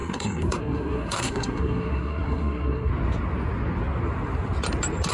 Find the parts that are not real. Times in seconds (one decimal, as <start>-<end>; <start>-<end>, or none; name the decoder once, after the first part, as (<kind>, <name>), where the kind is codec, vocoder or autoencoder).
0.0-2.9 (codec, SNAC)